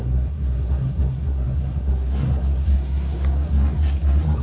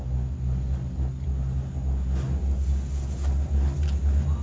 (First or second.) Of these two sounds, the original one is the second